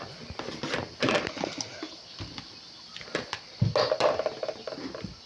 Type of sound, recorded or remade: recorded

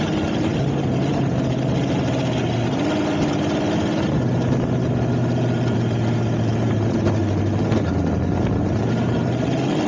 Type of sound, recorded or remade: recorded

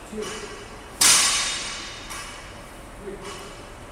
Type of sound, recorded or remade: remade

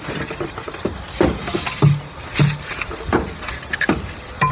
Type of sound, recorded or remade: recorded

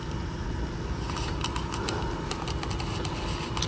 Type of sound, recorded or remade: recorded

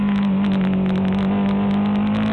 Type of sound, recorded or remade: recorded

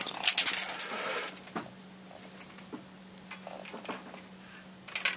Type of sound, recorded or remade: recorded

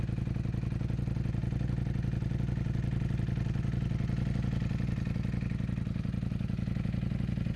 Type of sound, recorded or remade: recorded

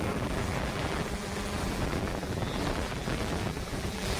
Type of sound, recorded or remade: remade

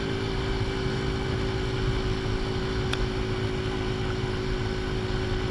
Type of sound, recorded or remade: recorded